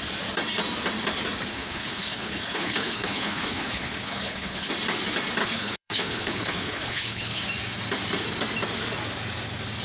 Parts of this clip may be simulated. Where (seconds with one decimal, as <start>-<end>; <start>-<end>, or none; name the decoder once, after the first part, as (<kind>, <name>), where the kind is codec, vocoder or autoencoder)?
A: 1.5-4.7 (codec, HILCodec); 5.4-7.4